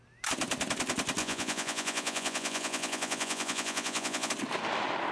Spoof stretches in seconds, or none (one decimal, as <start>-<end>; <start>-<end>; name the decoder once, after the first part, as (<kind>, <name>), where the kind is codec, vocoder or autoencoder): 1.2-4.3 (vocoder, Vocos)

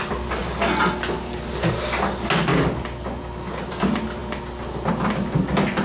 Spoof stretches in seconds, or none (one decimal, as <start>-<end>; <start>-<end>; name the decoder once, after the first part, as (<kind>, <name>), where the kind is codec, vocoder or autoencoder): none

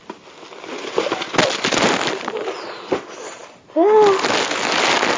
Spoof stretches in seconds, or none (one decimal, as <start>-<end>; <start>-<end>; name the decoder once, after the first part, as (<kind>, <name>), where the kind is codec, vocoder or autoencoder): none

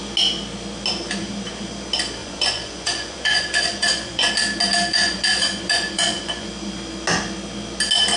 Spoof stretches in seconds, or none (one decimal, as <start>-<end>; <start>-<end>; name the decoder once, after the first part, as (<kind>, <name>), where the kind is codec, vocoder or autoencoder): 2.2-4.3 (vocoder, Vocos); 4.9-6.5

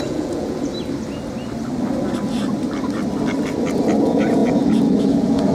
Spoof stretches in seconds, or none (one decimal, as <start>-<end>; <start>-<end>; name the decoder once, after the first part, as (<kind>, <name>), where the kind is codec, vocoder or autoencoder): 0.0-0.7 (vocoder, Vocos); 4.0-5.5

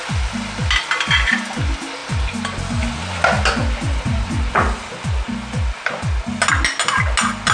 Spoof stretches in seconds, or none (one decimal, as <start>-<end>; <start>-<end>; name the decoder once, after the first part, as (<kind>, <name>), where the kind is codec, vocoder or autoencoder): none